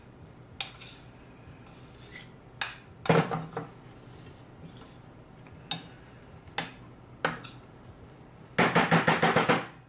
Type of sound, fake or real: real